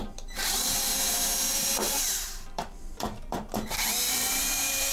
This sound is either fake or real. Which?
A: fake